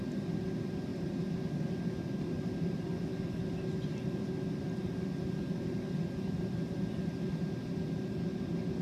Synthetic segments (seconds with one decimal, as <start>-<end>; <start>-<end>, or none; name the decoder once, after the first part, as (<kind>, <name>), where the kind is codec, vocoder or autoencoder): none